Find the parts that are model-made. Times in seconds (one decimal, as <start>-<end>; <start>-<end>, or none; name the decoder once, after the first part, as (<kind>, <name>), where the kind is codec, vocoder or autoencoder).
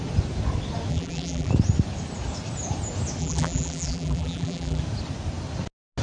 0.9-1.5 (vocoder, BigVGAN v2); 3.2-4.8